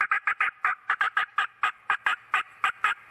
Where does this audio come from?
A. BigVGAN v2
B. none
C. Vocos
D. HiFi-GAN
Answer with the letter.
B